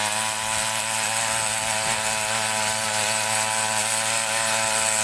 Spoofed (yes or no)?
no